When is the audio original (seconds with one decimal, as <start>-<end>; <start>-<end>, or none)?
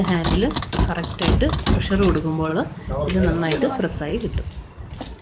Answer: 1.1-1.7; 2.5-3.3; 4.1-5.2